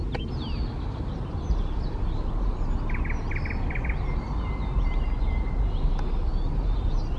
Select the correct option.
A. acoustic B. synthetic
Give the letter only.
A